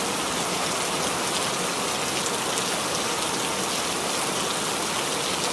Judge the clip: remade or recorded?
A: recorded